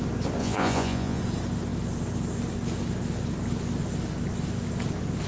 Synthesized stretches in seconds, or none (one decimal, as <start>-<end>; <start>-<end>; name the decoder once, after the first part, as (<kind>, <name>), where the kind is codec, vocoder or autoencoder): 0.4-1.2 (vocoder, Vocos)